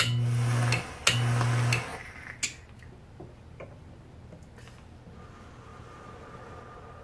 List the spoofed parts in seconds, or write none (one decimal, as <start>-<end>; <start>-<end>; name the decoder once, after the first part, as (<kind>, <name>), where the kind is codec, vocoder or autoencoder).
none